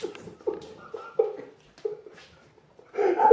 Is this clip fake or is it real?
real